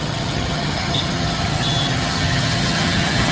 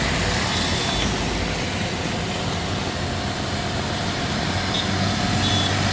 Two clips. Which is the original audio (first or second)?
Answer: second